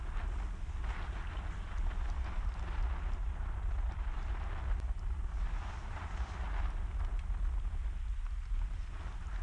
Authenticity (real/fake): real